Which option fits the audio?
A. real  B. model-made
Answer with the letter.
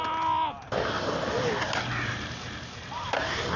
A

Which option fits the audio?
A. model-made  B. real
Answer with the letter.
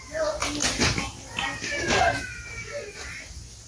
B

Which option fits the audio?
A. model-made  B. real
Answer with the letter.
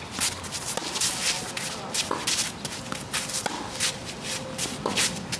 B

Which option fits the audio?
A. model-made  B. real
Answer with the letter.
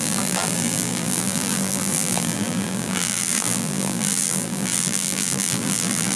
A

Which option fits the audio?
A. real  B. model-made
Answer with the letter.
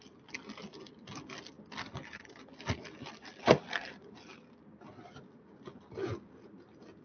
A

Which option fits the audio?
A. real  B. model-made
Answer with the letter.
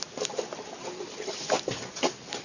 A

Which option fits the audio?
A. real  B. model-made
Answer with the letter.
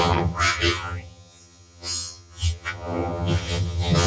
B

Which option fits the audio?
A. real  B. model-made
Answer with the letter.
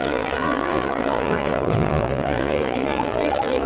B